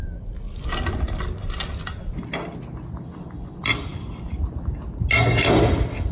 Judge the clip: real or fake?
real